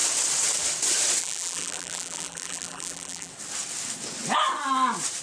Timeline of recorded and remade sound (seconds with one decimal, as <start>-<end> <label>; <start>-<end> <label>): 0.0-1.2 recorded; 1.2-3.3 remade; 3.3-5.2 recorded